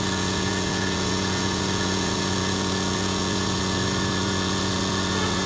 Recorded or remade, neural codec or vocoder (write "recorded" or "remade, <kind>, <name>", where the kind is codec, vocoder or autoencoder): remade, vocoder, Vocos